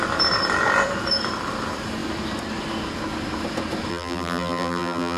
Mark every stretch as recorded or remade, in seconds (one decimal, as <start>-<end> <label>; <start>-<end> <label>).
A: 0.0-3.9 recorded; 3.9-5.2 remade